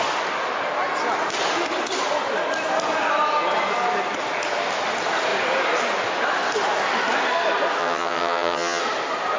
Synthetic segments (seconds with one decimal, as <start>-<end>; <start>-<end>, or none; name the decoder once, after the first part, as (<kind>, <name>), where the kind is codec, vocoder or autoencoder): 7.8-8.8 (vocoder, HiFi-GAN)